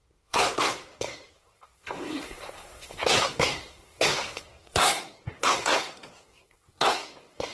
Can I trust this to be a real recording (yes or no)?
no